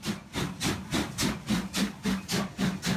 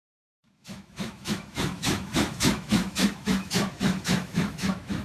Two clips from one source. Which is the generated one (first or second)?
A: second